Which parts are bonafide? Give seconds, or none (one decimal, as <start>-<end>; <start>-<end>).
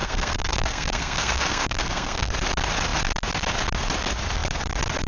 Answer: 2.3-5.1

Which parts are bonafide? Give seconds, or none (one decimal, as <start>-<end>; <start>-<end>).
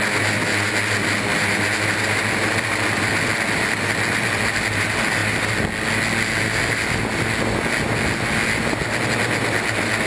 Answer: 0.0-10.1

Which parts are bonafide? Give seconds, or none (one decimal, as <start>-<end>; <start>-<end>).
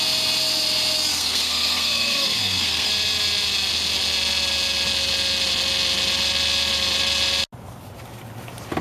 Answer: 0.0-1.1; 2.9-8.8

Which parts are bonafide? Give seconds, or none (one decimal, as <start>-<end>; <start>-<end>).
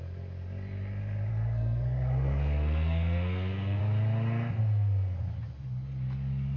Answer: 0.0-1.3; 3.8-4.6; 5.2-6.6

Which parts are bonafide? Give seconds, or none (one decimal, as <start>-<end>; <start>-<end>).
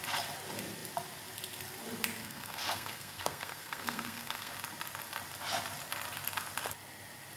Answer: 0.0-2.2; 4.5-7.4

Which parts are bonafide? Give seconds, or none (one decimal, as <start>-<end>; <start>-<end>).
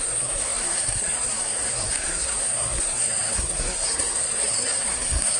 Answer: none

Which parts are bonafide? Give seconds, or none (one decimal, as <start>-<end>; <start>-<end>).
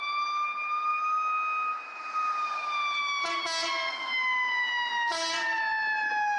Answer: 0.0-6.4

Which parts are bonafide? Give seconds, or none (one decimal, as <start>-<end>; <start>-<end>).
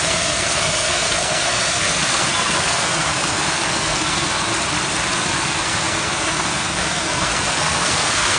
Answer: 4.5-5.1